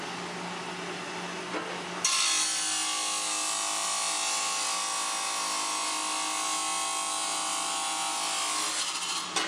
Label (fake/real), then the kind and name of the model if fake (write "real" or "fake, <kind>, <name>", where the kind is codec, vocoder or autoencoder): real